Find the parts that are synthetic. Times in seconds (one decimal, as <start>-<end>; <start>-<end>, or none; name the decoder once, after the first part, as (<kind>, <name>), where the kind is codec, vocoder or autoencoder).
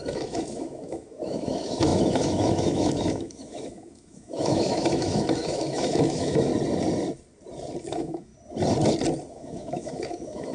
0.0-6.5 (autoencoder, DAC-VAE); 7.8-8.3; 9.3-10.5